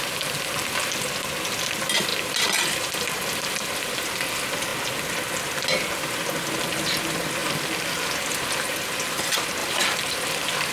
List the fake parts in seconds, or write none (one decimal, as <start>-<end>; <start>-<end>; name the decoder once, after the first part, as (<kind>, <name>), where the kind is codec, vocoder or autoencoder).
2.1-3.6 (vocoder, BigVGAN v2); 7.4-8.4; 9.6-10.7